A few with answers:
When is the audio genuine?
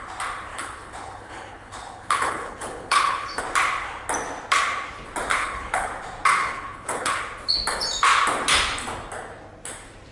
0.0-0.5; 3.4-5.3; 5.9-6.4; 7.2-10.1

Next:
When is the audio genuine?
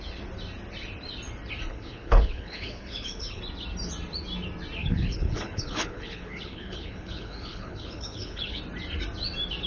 0.0-1.7; 3.4-4.8; 8.6-9.7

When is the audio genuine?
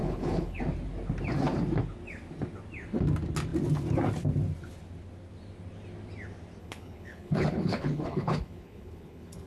0.6-6.6